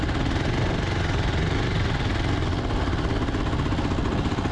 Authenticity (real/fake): real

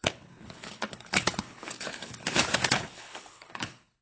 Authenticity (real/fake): fake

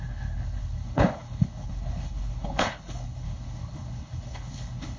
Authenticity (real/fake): fake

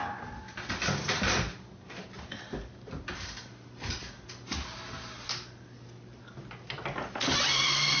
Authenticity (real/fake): real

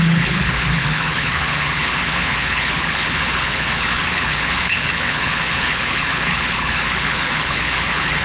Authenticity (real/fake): fake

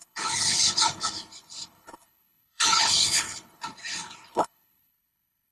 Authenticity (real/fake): fake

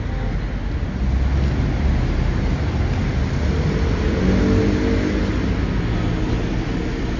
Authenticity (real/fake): real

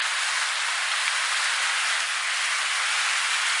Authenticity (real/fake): real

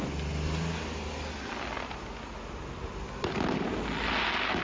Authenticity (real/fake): real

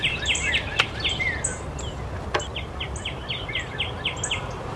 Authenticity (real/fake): real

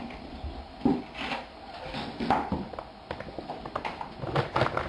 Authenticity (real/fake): real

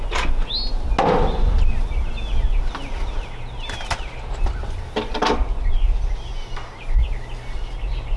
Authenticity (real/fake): real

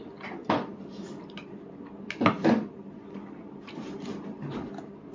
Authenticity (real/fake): real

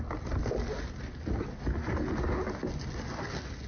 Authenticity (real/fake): real